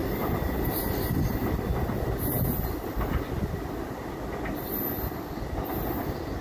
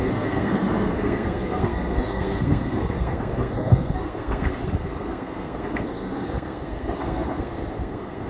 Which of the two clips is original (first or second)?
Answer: first